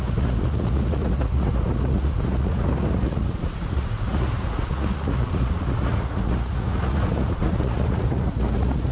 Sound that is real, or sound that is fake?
fake